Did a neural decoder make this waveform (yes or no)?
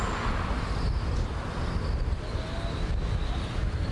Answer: no